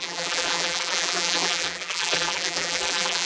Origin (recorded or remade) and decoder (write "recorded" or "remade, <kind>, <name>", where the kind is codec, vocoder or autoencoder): remade, vocoder, BigVGAN v2